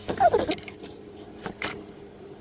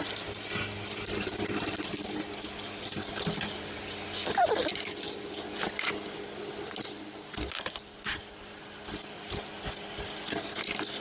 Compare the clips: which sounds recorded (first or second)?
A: second